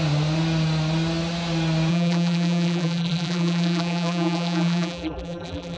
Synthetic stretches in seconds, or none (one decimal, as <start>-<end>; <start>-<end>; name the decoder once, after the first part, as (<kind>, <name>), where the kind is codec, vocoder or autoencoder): 1.9-5.8 (vocoder, BigVGAN v2)